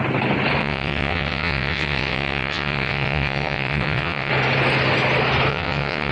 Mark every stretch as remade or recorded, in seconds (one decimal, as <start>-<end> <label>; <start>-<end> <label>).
0.0-0.6 recorded; 0.6-4.3 remade; 4.3-5.5 recorded; 5.5-6.1 remade